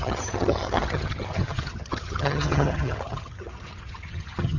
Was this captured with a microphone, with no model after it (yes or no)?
no